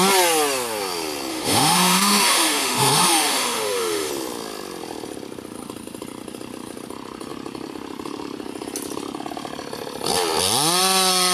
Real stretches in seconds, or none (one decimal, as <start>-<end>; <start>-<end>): 0.0-1.3; 4.1-11.3